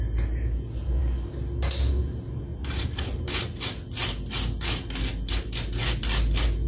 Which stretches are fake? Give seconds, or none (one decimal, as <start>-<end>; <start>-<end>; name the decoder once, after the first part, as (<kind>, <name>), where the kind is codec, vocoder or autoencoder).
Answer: 2.5-3.3 (vocoder, BigVGAN v2)